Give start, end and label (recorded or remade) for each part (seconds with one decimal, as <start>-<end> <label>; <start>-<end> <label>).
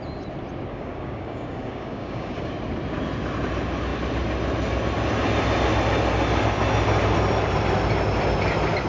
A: 0.0-0.7 recorded; 0.7-2.5 remade; 2.5-8.9 recorded